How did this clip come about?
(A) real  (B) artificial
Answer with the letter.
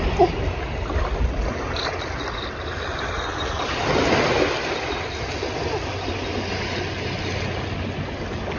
A